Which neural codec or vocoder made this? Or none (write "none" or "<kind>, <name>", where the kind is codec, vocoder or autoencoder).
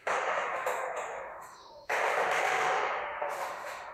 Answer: autoencoder, DAC-VAE